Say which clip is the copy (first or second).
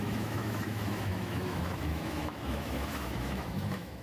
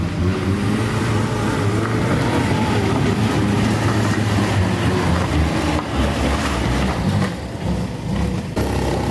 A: first